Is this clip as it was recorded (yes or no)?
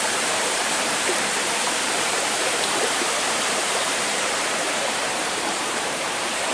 no